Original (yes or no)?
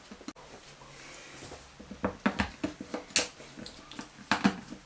yes